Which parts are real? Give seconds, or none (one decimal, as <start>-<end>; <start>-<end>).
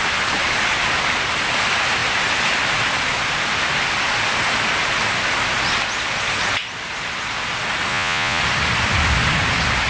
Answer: 0.0-7.9; 8.4-9.9